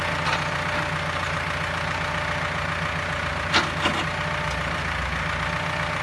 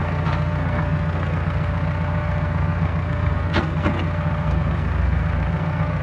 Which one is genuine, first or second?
first